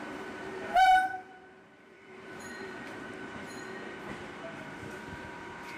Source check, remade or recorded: remade